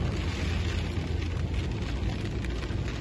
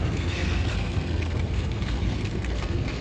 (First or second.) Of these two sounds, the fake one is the second